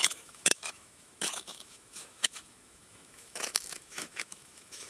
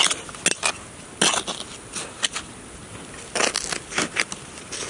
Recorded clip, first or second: second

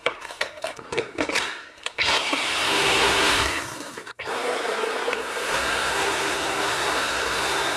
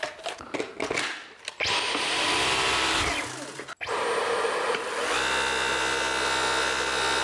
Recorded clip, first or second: second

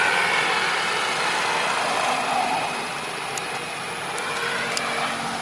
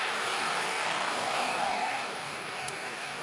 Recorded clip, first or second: first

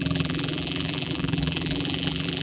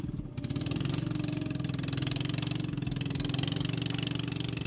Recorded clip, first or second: second